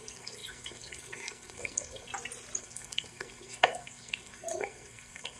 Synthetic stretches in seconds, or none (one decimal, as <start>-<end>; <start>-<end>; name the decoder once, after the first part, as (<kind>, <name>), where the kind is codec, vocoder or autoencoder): 0.0-2.1 (codec, SNAC); 2.6-5.4